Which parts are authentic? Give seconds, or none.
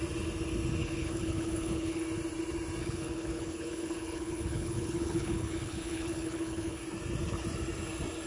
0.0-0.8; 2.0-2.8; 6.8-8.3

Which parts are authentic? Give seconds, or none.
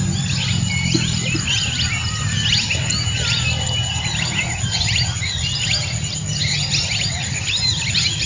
0.0-8.3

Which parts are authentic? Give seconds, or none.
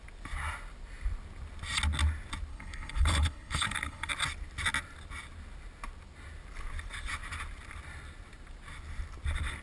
0.0-2.5; 4.1-9.6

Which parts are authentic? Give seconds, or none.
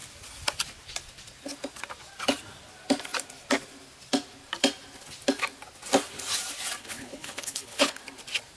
0.0-6.8; 8.0-8.6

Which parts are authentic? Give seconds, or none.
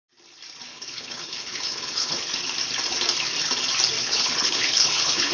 0.0-0.7; 2.3-4.0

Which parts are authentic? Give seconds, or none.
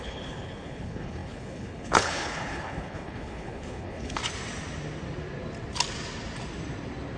4.2-7.2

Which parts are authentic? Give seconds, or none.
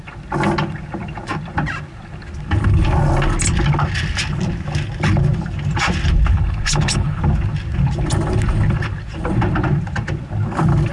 0.0-6.3; 7.2-10.9